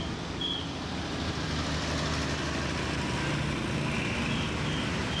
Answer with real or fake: real